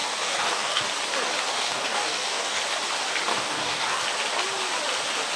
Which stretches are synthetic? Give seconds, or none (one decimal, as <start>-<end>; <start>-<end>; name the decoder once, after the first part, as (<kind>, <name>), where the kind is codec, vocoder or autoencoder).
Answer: 0.0-0.8 (codec, DAC); 1.5-2.6; 3.3-4.0